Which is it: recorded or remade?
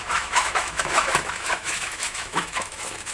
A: remade